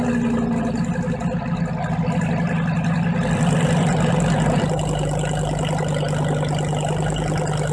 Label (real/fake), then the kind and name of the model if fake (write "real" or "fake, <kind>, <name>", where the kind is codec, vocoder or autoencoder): real